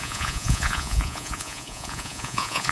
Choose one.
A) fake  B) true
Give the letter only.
A